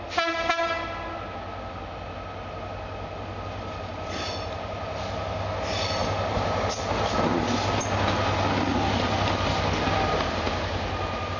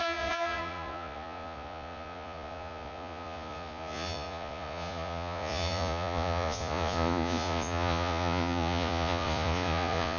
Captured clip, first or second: first